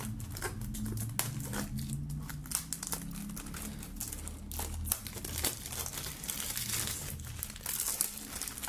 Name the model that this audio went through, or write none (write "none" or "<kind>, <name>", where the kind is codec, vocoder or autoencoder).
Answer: none